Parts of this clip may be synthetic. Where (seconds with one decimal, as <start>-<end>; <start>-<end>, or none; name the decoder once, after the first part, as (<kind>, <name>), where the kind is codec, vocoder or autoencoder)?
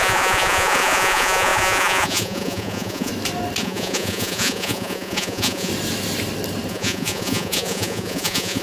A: 0.0-3.1 (vocoder, Vocos); 3.6-5.7; 6.7-8.6